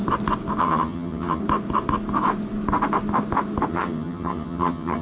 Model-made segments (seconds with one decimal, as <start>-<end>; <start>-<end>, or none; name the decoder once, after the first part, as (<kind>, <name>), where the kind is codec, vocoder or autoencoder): 0.6-1.4 (vocoder, HiFi-GAN); 3.7-5.0